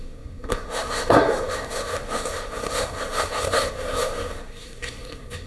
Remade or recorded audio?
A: remade